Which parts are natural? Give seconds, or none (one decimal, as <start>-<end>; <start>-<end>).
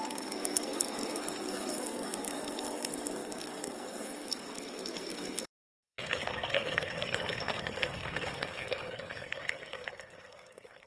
none